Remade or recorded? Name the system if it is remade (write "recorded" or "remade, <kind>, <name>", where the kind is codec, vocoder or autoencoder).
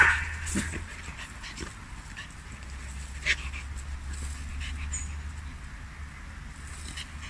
recorded